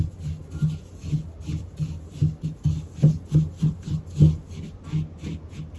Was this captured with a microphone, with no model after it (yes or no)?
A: yes